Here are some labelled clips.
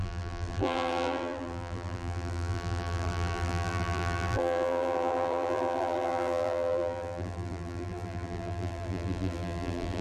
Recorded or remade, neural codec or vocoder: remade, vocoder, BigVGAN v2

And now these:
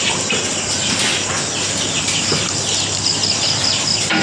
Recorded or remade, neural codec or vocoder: recorded